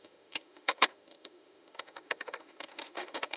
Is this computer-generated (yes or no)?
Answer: yes